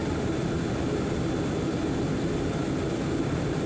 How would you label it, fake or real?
real